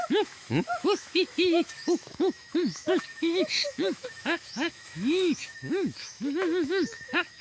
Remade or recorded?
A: remade